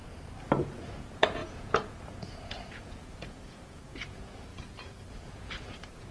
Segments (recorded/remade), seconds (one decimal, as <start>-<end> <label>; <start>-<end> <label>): 0.0-0.6 recorded; 0.6-4.5 remade; 4.5-5.1 recorded; 5.1-6.1 remade